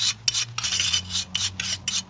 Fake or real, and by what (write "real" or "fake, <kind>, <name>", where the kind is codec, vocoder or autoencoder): real